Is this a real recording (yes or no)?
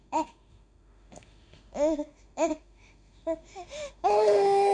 no